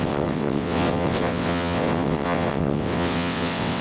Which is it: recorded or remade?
remade